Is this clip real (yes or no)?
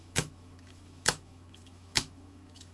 no